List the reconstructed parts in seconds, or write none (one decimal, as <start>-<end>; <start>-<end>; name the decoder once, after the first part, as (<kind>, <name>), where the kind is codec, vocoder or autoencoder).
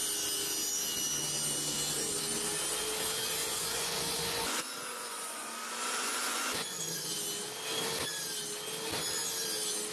3.4-7.1 (vocoder, Vocos)